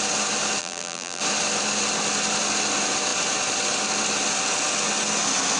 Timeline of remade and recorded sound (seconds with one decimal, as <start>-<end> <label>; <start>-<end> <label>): 0.0-0.6 recorded; 0.6-1.2 remade; 1.2-5.6 recorded